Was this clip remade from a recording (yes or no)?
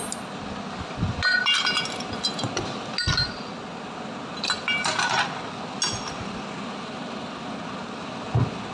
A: no